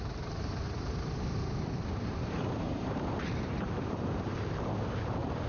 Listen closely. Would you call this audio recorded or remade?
remade